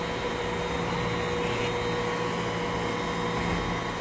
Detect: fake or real real